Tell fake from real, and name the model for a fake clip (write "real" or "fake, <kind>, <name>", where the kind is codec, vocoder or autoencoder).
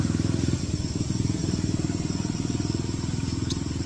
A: real